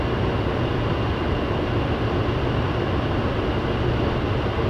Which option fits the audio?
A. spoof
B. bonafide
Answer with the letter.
B